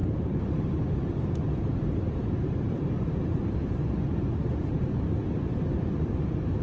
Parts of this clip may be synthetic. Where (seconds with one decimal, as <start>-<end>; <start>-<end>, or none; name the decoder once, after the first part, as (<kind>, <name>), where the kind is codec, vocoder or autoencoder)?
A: 0.0-4.0 (vocoder, BigVGAN v2); 5.5-6.1